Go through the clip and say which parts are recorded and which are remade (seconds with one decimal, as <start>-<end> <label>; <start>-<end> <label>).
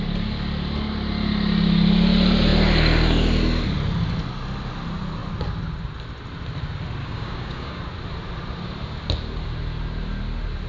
0.0-7.0 recorded; 7.0-7.8 remade; 7.8-10.7 recorded